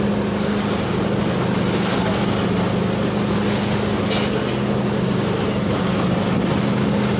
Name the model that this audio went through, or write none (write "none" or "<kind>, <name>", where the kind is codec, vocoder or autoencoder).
none